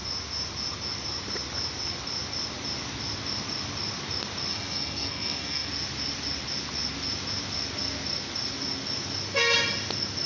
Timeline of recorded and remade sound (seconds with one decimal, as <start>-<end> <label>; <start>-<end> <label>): 0.0-4.5 recorded; 4.5-5.7 remade; 5.7-10.3 recorded

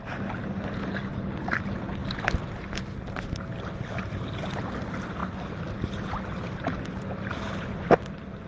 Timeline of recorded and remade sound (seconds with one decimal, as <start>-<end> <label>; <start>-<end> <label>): 0.0-8.5 recorded